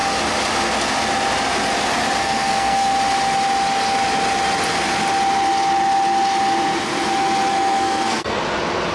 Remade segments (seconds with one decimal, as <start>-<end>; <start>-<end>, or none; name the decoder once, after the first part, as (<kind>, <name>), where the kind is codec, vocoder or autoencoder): 2.2-2.9 (codec, SNAC); 7.5-8.4